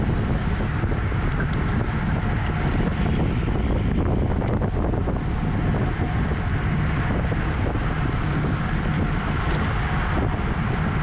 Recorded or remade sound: recorded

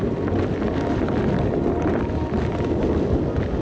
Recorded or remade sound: recorded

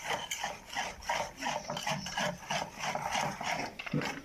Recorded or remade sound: recorded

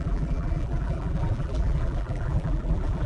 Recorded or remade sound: remade